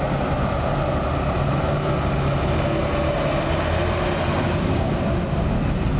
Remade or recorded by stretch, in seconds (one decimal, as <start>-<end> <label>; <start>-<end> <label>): 0.0-4.4 recorded; 4.4-4.9 remade; 4.9-6.0 recorded